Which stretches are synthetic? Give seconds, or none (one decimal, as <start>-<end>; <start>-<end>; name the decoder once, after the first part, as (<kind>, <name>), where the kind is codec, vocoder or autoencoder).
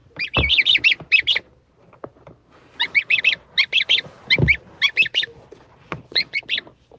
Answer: 5.8-6.4 (vocoder, Vocos)